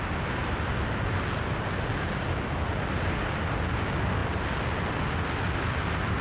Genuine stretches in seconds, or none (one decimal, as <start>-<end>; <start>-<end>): 0.0-6.2